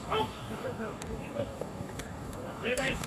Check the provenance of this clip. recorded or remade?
remade